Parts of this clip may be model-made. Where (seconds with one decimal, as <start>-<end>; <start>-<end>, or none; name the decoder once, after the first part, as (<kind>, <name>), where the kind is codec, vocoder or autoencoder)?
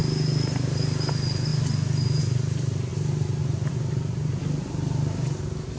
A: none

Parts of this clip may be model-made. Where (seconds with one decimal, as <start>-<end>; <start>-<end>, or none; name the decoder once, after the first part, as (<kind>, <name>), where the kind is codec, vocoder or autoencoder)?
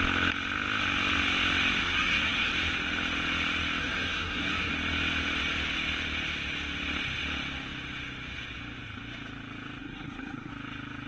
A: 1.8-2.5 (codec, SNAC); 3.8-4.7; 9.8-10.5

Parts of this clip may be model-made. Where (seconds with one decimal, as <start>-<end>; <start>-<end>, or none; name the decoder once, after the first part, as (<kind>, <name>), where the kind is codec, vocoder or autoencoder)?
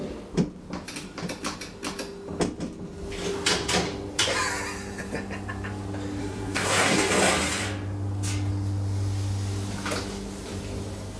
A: 6.2-7.1 (codec, SNAC)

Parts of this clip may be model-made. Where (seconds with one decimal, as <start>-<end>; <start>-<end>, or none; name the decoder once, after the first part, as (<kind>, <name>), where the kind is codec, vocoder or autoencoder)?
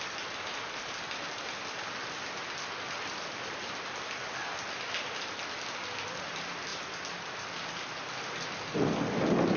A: none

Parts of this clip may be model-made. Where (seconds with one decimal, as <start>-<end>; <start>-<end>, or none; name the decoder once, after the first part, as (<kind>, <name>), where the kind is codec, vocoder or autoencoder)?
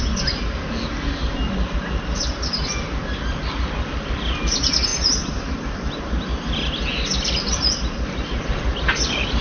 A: 4.9-6.0 (vocoder, BigVGAN v2)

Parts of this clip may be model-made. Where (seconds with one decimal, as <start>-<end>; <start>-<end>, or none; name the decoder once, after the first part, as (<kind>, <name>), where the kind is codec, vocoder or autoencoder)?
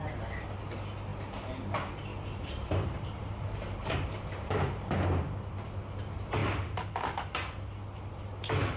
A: 2.1-5.4 (vocoder, BigVGAN v2)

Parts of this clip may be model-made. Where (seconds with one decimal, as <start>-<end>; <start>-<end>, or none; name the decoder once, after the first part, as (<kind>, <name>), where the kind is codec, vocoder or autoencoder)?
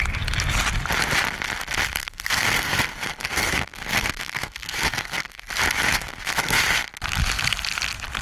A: 2.0-5.5 (codec, SNAC); 5.9-6.6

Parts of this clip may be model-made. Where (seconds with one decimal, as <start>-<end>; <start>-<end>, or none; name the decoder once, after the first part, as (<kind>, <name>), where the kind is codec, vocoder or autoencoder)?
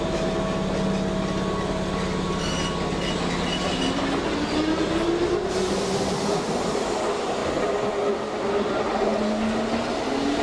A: none